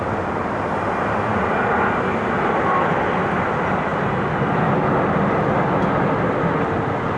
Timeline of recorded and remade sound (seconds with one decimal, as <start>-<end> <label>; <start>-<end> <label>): 0.0-7.2 recorded